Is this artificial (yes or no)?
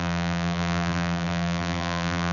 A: yes